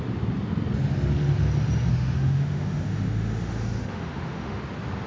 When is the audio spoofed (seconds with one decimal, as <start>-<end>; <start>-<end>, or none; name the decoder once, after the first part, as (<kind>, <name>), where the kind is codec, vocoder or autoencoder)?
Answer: 1.9-4.6 (autoencoder, DAC-VAE)